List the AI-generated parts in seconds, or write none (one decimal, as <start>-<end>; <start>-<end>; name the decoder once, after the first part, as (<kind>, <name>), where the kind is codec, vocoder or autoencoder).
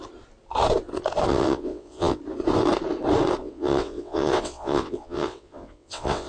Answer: 1.3-2.2 (vocoder, WaveNeXt); 3.4-6.3